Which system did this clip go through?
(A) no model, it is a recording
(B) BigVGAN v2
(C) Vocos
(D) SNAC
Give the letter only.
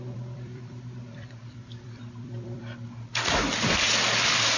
B